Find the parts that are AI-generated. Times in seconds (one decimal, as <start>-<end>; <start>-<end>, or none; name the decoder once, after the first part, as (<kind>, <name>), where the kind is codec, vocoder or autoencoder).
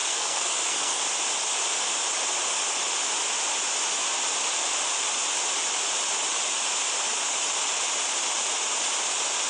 0.0-1.0 (codec, SNAC)